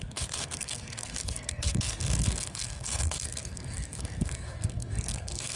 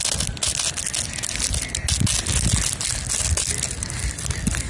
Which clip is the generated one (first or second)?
first